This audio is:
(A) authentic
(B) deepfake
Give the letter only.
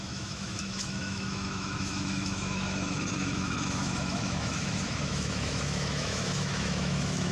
B